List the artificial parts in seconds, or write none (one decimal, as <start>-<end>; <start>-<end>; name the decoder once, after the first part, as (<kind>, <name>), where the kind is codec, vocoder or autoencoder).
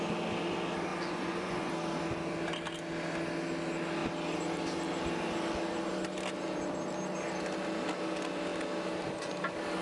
0.9-1.7 (vocoder, Vocos)